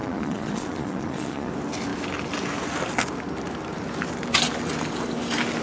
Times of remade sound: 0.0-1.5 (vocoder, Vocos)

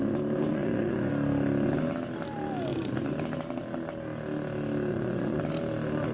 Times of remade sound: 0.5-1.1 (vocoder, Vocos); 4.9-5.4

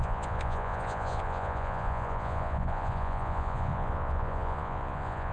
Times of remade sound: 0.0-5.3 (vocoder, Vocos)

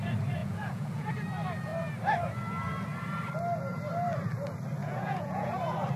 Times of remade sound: 0.4-1.1 (vocoder, Vocos); 4.8-5.6

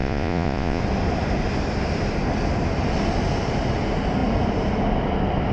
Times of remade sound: 0.0-0.8 (vocoder, Vocos)

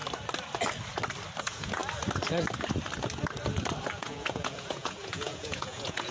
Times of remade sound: 1.4-1.8 (vocoder, Vocos); 3.9-6.1

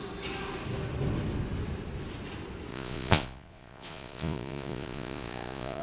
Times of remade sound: 2.7-5.8 (vocoder, Vocos)